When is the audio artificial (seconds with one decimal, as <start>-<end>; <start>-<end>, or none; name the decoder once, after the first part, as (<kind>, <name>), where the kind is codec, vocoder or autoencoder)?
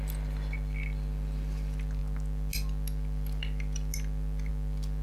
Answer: none